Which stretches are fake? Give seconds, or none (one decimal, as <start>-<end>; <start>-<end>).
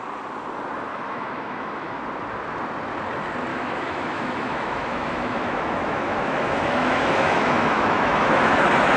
0.9-2.0; 3.5-8.6